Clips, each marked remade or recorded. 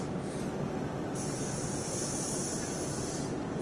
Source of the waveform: recorded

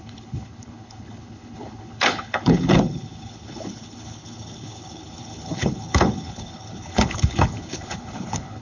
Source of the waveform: remade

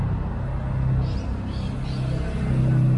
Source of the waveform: recorded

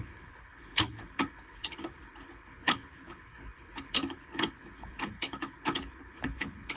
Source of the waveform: remade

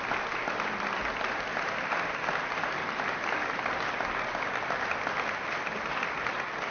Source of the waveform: recorded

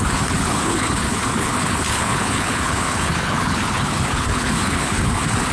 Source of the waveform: remade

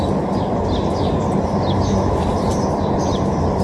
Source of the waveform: recorded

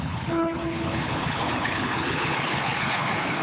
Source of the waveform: remade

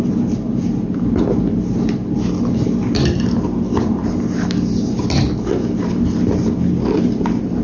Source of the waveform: recorded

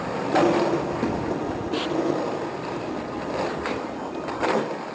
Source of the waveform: recorded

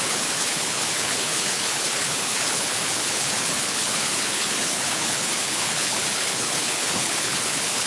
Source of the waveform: remade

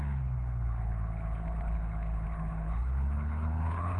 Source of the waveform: remade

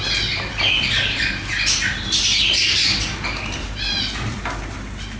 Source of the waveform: recorded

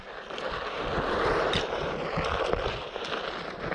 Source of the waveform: recorded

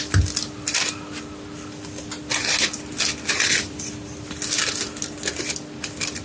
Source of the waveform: recorded